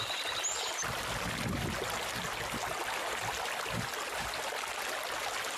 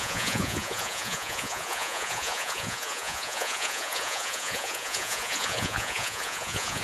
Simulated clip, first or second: second